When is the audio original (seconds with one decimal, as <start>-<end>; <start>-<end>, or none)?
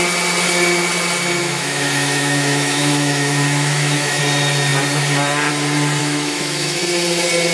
0.0-1.4; 4.2-6.0; 6.8-7.5